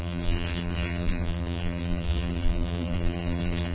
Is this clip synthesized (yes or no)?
yes